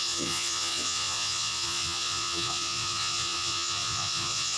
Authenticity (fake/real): fake